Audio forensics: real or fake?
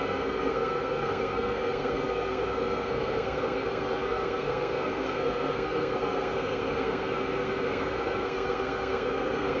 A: fake